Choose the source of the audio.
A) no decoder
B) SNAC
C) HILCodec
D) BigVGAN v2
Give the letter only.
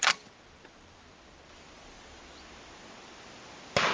A